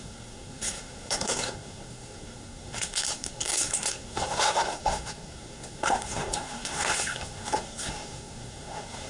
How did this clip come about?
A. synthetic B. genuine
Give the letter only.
A